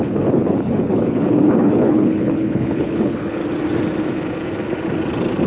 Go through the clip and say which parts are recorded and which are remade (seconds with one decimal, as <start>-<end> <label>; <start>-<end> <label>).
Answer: 0.0-3.4 remade; 3.4-5.5 recorded